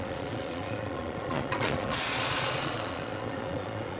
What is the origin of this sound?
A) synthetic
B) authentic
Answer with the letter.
A